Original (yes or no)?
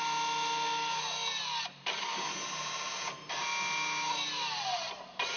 yes